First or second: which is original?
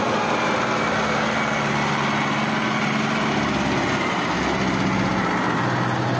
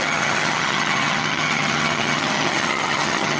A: first